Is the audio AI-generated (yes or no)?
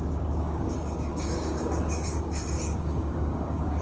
yes